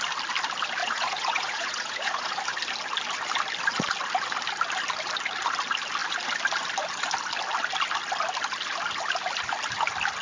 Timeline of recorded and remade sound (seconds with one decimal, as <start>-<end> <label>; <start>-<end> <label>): 0.0-0.8 recorded; 0.8-2.4 remade; 2.4-10.2 recorded